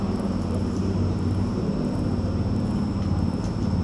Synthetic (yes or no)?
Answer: yes